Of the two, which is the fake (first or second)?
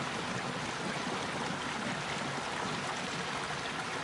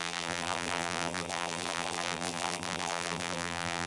second